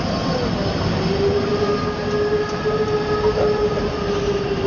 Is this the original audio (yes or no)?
yes